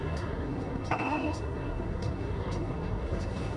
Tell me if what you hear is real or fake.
fake